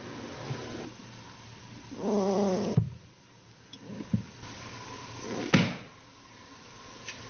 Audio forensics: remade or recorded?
recorded